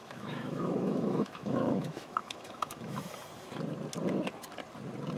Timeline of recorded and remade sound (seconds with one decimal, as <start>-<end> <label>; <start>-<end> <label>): 0.0-3.1 remade; 3.1-5.2 recorded